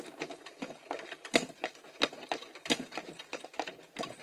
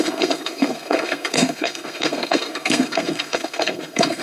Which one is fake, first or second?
second